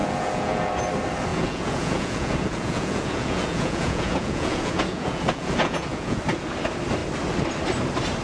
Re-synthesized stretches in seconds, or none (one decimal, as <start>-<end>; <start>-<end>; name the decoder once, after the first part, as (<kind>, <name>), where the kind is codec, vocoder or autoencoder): 0.0-0.7 (vocoder, Vocos); 1.3-6.2